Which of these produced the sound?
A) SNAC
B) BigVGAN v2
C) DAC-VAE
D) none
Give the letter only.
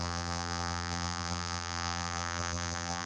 B